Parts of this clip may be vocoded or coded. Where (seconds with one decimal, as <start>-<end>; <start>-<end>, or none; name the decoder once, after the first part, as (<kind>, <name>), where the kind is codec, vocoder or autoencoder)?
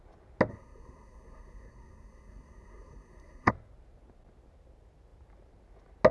0.5-3.5 (codec, SNAC)